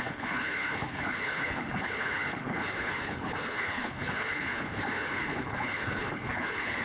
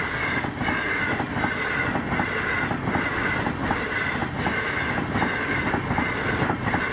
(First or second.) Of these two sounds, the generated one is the first